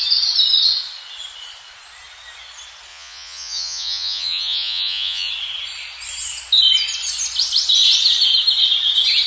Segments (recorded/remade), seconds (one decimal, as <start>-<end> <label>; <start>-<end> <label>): 0.0-2.9 recorded; 2.9-5.3 remade; 5.3-9.3 recorded